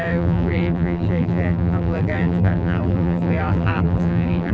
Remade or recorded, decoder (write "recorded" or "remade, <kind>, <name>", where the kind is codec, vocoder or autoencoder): remade, vocoder, BigVGAN v2